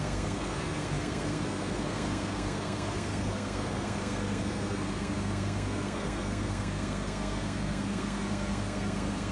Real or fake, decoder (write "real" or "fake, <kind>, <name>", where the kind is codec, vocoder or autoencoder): fake, codec, SNAC